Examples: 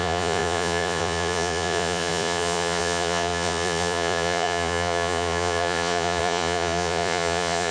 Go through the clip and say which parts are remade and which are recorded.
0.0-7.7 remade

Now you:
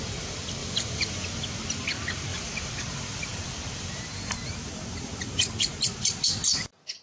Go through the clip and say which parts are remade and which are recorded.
0.0-0.6 recorded; 0.6-1.4 remade; 1.4-2.3 recorded; 2.3-5.3 remade; 5.3-7.0 recorded

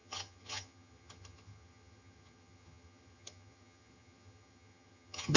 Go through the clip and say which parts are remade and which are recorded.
0.0-5.4 remade

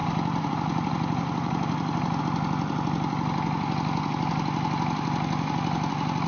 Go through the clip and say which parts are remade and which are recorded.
0.0-2.2 remade; 2.2-6.3 recorded

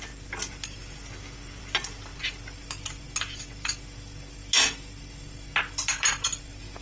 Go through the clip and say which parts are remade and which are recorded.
0.0-6.8 recorded